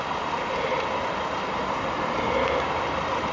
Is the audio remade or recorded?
recorded